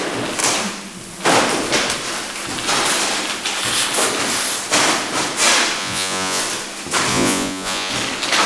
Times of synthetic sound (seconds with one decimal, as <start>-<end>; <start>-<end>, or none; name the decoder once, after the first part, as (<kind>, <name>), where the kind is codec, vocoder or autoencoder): 5.8-6.4 (vocoder, Vocos); 7.1-7.9